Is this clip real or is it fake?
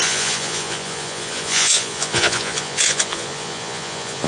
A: fake